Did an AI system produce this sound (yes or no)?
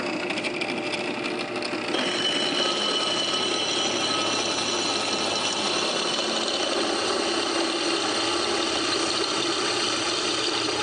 no